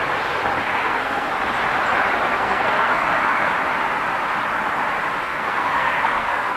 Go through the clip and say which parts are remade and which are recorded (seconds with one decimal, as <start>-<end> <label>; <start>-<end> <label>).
0.0-0.7 recorded; 0.7-1.3 remade; 1.3-2.3 recorded; 2.3-3.5 remade; 3.5-5.2 recorded; 5.2-6.6 remade